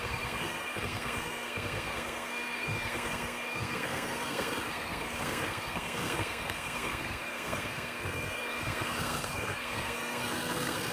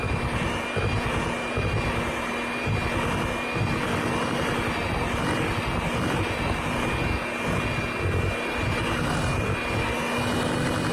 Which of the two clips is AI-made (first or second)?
first